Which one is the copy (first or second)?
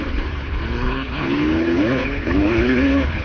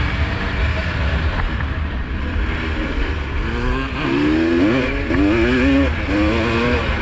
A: first